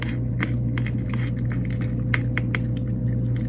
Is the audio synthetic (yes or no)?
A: no